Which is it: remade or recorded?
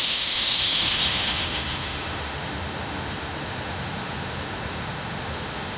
remade